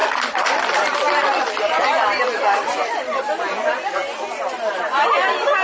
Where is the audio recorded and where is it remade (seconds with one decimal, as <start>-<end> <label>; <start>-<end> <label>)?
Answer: 0.0-3.4 remade; 3.4-5.6 recorded